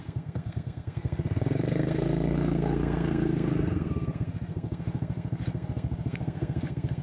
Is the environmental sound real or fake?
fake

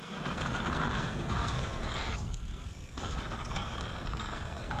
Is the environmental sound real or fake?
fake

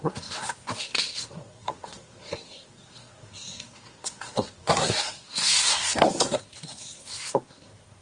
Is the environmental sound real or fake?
fake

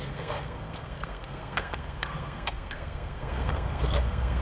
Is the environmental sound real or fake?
fake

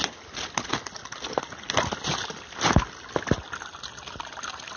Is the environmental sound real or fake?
real